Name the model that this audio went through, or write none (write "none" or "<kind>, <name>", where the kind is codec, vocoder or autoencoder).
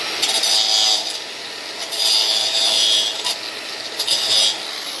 none